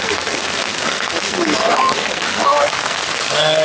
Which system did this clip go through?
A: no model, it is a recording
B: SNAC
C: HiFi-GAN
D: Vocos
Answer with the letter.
B